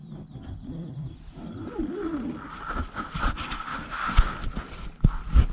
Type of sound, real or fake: real